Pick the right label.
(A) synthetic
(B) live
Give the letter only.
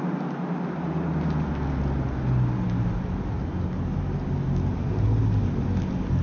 B